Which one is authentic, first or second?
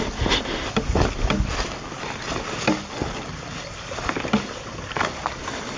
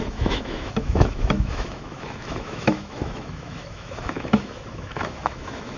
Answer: first